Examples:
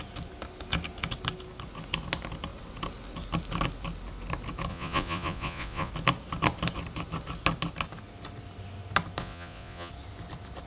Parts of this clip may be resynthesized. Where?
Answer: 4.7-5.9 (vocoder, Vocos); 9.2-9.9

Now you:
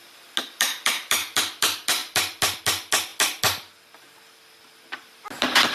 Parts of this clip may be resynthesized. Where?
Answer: none